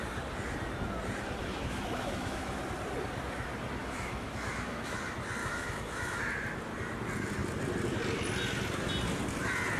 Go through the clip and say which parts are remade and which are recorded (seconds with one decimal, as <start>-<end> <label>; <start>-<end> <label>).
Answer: 0.0-1.4 recorded; 1.4-2.6 remade; 2.6-3.8 recorded; 3.8-5.0 remade; 5.0-5.4 recorded; 5.4-6.2 remade; 6.2-9.8 recorded